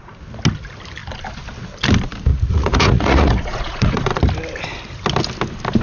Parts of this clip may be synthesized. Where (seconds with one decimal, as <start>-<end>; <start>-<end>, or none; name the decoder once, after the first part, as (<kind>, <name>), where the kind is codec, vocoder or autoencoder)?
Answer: 2.3-4.1 (vocoder, Vocos)